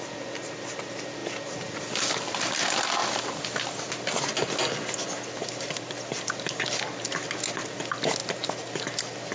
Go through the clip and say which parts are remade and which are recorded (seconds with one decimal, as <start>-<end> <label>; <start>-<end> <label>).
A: 0.0-8.2 recorded; 8.2-8.8 remade; 8.8-9.3 recorded